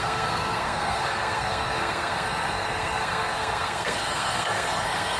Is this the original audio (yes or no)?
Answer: no